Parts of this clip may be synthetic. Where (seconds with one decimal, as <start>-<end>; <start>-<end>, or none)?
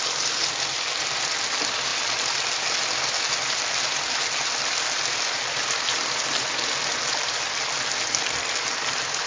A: none